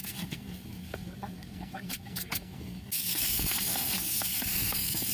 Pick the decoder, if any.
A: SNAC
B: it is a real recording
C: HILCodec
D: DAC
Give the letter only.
A